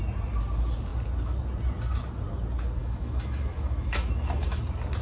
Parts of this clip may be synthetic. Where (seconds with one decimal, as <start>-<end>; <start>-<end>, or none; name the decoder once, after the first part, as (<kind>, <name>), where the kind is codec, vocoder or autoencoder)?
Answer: 2.8-4.6 (autoencoder, DAC-VAE)